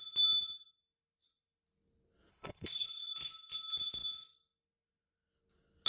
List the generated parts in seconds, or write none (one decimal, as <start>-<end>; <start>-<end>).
2.3-3.1